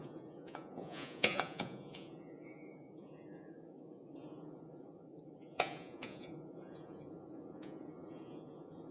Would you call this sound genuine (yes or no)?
no